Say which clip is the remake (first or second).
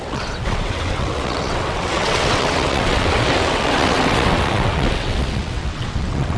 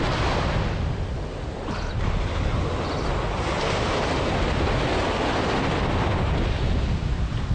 first